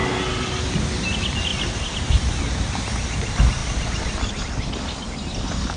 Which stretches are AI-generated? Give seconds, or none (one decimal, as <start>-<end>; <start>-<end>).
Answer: none